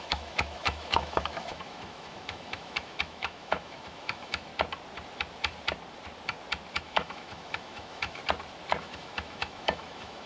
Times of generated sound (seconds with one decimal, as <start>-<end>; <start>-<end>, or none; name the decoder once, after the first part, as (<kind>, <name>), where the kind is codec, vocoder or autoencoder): 0.0-4.5 (autoencoder, DAC-VAE); 6.8-8.2; 8.8-10.3